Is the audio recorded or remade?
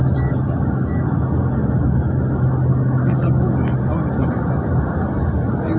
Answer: recorded